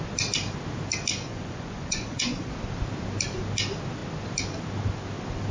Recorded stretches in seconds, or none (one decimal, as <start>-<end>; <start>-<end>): 0.0-1.1; 2.5-5.5